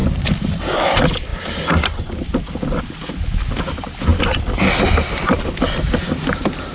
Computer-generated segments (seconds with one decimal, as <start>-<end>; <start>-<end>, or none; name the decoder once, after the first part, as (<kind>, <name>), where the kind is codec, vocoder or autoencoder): none